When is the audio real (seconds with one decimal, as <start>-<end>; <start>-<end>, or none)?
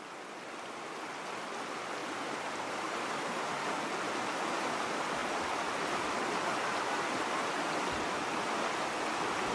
0.0-2.0; 3.8-9.5